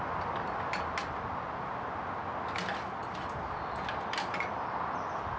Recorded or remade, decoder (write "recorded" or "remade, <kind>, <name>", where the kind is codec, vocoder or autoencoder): recorded